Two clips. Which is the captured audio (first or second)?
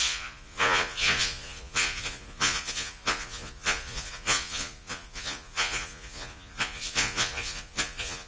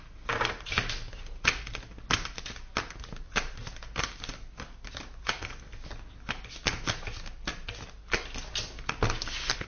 second